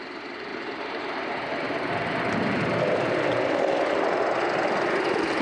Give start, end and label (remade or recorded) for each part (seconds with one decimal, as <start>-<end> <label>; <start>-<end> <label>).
0.0-0.5 recorded; 0.5-1.9 remade; 1.9-5.4 recorded